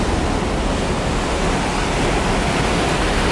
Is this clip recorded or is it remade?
recorded